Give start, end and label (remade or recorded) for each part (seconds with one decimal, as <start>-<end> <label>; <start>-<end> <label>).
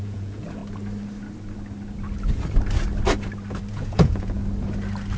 0.0-0.6 remade; 0.6-3.7 recorded; 3.7-4.4 remade; 4.4-5.2 recorded